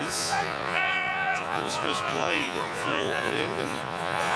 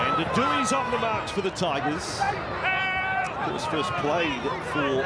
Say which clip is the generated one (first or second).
first